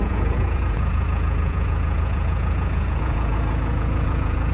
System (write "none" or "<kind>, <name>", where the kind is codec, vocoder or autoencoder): vocoder, Vocos